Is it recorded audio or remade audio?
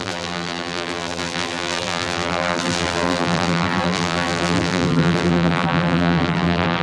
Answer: remade